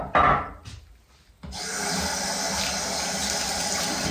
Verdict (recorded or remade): recorded